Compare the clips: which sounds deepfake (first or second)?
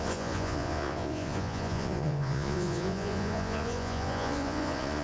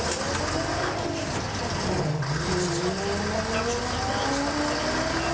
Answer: first